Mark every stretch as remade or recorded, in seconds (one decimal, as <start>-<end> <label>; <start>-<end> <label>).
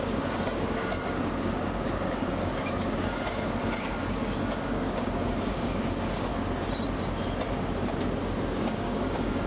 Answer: 0.0-6.3 remade; 6.3-8.5 recorded; 8.5-9.5 remade